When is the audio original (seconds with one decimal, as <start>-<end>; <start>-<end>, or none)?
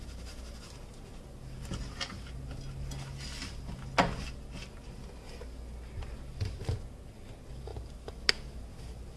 0.0-9.2